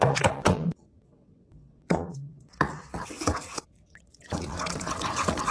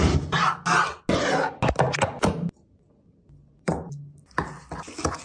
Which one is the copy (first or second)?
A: first